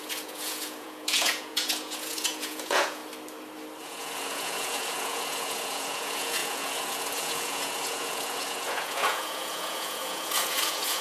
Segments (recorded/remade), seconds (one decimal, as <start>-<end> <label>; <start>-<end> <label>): 0.0-3.0 remade; 3.0-3.8 recorded; 3.8-11.0 remade